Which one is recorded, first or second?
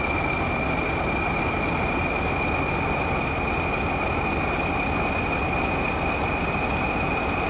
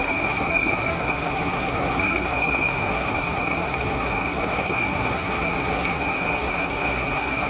first